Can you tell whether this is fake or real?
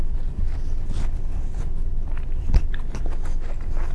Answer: real